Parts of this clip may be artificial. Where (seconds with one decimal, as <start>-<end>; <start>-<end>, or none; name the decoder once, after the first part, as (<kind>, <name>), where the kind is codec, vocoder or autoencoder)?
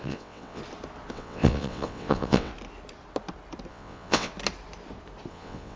0.0-0.6 (vocoder, WaveNeXt); 1.1-2.5; 3.7-4.3; 5.3-5.8